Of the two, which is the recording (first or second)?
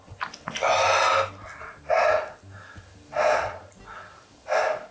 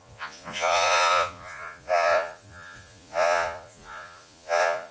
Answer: first